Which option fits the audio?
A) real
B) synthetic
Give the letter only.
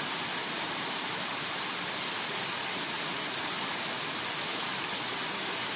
A